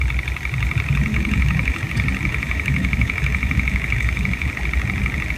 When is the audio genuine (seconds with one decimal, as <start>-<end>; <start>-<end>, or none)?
0.0-1.1; 1.8-2.3; 4.5-5.4